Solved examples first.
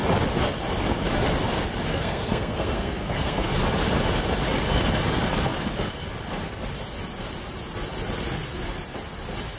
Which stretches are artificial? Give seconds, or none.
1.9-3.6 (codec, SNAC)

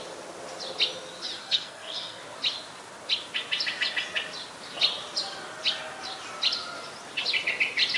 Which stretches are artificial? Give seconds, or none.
1.4-2.2 (codec, SNAC)